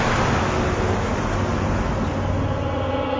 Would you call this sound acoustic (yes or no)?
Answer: yes